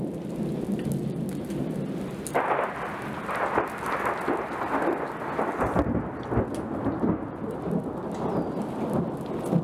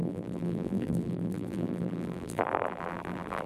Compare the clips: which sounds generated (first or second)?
second